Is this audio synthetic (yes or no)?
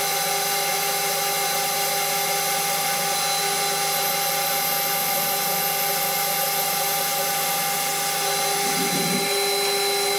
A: no